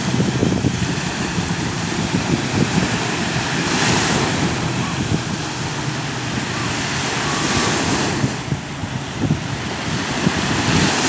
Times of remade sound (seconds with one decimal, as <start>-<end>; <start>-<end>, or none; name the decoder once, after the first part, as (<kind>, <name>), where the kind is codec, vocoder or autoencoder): 0.4-5.2 (vocoder, BigVGAN v2)